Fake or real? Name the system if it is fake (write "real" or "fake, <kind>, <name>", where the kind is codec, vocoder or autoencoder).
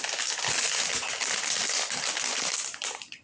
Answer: real